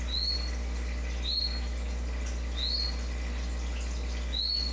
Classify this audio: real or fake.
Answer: real